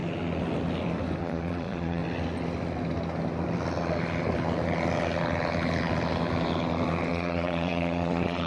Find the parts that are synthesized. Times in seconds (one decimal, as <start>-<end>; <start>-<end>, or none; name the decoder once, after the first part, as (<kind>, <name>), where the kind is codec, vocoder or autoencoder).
1.2-2.0 (vocoder, Vocos); 7.1-8.5

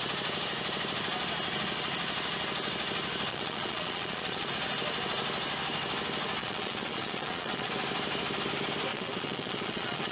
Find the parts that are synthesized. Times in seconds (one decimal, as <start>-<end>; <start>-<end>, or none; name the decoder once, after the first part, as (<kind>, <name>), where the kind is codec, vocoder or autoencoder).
3.3-4.5 (vocoder, Vocos); 6.4-7.7; 8.9-10.1

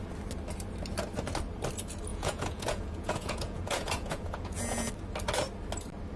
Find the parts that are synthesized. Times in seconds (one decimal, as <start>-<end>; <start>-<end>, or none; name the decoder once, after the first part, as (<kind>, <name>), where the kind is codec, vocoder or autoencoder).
2.1-4.9 (vocoder, Vocos)

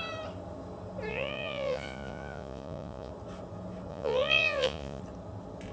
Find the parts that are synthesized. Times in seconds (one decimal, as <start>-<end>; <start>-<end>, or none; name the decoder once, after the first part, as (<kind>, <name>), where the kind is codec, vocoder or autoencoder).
1.1-3.1 (vocoder, Vocos); 3.9-5.0

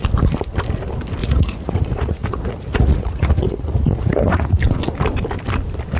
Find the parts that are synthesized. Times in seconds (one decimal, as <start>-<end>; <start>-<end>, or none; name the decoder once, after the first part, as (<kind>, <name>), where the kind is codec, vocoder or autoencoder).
1.2-4.6 (vocoder, Vocos)

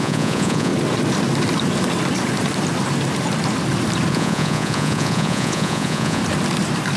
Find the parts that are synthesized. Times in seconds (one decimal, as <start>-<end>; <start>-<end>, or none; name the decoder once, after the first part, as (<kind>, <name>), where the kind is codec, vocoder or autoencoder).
0.0-0.7 (vocoder, Vocos); 4.1-6.2

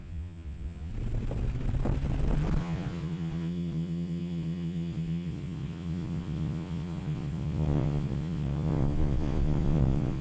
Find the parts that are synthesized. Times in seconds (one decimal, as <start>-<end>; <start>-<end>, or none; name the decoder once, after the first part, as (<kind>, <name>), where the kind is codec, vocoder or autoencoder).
0.0-0.9 (vocoder, Vocos); 2.6-10.2